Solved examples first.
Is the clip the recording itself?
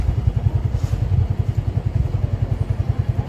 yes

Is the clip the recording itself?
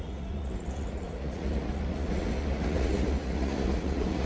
no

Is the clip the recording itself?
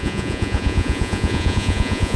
no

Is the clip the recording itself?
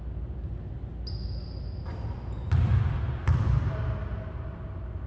yes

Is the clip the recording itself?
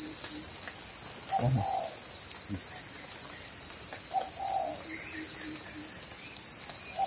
yes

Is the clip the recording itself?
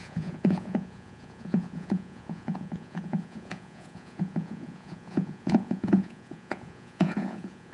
no